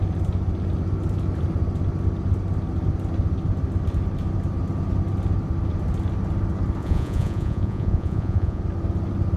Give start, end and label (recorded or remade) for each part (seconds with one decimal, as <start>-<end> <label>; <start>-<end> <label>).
0.0-6.8 recorded; 6.8-8.6 remade; 8.6-9.4 recorded